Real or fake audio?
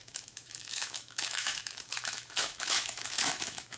fake